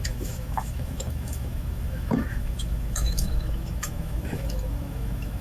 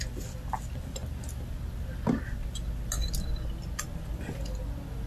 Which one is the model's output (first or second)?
first